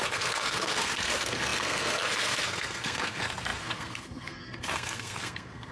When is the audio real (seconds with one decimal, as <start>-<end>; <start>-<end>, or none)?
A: none